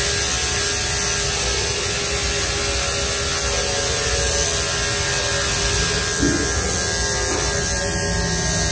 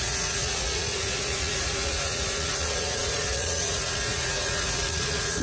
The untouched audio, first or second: first